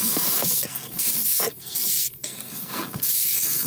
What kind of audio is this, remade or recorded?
remade